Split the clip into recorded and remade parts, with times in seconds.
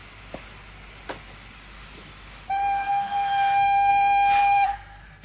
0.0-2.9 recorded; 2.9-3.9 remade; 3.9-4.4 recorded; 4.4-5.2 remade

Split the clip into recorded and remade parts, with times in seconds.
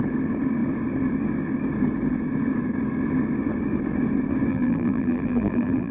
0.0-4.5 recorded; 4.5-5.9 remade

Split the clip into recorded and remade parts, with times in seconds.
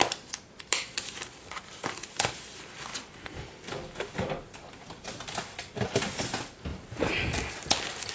0.0-8.1 recorded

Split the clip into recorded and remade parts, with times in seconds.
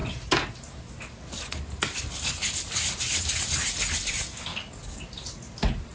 0.0-4.5 recorded; 4.5-5.0 remade; 5.0-5.9 recorded